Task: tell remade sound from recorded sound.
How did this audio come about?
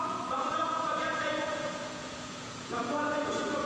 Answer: remade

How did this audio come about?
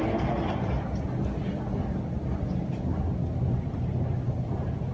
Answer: recorded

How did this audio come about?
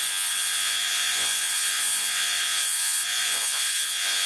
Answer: remade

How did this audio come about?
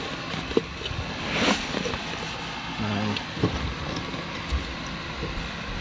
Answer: recorded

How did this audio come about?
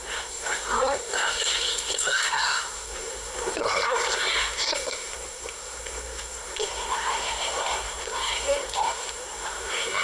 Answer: remade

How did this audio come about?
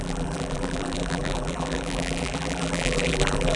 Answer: remade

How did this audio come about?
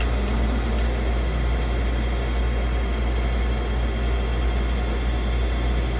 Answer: recorded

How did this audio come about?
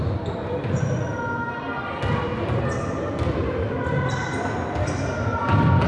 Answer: recorded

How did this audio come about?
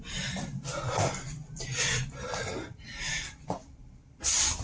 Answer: remade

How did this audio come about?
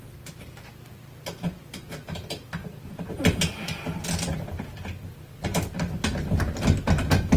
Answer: recorded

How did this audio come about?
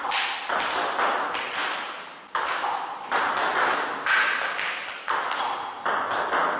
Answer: recorded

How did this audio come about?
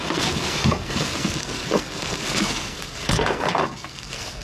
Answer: remade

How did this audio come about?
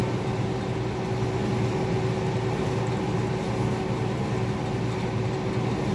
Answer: recorded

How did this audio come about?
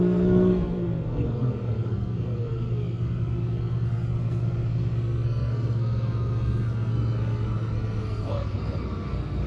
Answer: remade